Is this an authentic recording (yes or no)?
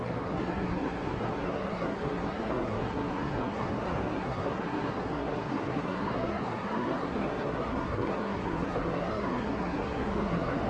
no